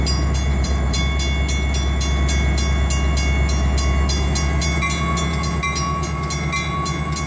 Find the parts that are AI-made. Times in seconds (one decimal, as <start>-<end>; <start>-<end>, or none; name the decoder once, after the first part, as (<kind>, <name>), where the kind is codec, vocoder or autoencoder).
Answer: 0.5-1.0 (vocoder, BigVGAN v2)